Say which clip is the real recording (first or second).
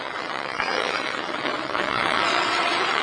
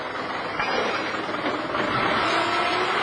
second